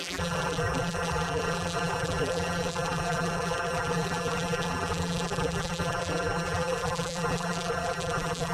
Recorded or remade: remade